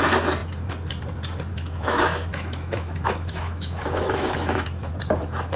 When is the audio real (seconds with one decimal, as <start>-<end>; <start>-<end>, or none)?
0.0-1.5; 4.9-5.6